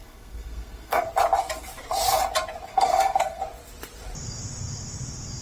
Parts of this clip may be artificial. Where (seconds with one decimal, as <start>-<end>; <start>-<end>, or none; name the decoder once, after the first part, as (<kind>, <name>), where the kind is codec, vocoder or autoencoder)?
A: 0.0-1.1 (codec, SNAC); 2.7-3.4